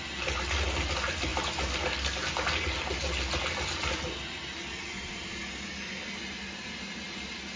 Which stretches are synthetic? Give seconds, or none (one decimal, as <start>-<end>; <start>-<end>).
none